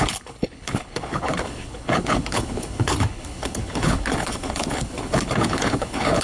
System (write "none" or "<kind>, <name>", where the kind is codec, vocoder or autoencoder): codec, HILCodec